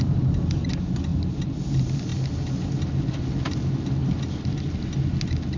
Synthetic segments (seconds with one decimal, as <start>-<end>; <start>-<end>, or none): none